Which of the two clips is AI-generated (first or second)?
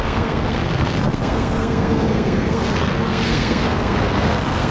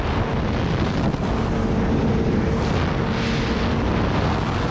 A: first